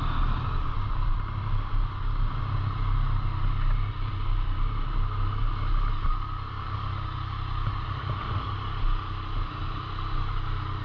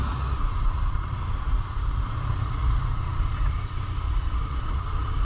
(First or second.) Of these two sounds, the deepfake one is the second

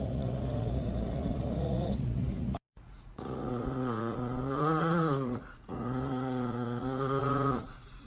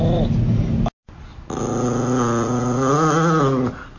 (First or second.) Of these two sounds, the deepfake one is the first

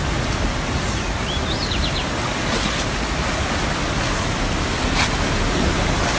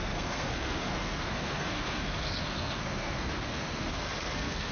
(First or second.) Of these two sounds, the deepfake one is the second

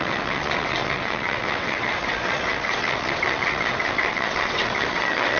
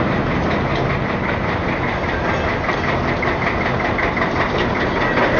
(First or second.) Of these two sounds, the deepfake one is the first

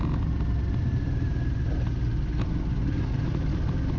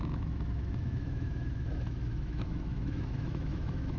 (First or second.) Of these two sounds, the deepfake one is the second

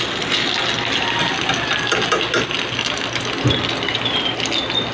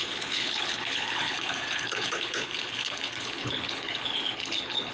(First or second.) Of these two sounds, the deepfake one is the second